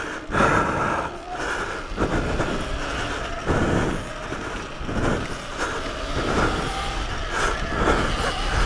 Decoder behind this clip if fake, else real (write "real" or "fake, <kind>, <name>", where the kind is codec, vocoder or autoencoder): real